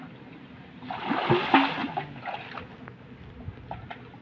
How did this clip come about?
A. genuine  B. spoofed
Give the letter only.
A